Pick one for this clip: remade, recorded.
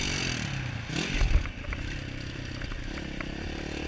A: remade